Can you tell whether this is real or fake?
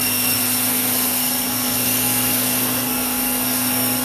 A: fake